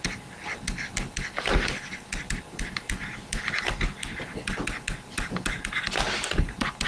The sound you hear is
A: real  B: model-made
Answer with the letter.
A